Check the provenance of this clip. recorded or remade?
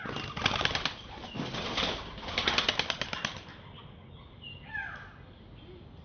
recorded